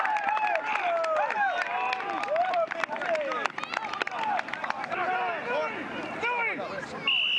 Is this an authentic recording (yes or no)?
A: yes